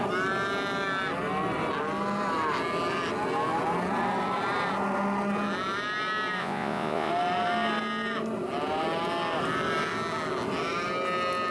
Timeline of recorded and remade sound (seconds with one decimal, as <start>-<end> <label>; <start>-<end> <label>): 0.0-6.4 recorded; 6.4-7.1 remade; 7.1-11.5 recorded